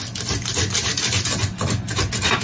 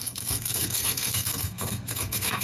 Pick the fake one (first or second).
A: second